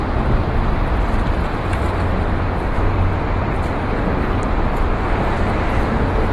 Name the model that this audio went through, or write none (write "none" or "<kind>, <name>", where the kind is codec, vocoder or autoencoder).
none